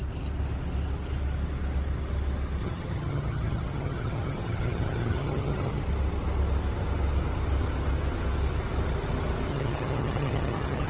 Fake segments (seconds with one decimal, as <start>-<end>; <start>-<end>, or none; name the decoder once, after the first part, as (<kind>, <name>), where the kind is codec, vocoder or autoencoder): 2.6-5.8 (vocoder, HiFi-GAN); 9.5-10.9

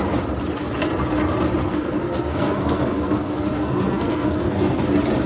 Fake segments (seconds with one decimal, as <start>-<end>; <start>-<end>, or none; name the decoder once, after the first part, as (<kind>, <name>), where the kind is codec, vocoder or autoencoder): 1.6-4.8 (codec, SNAC)